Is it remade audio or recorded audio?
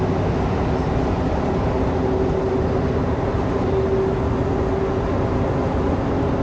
recorded